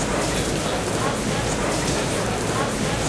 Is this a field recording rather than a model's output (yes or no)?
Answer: yes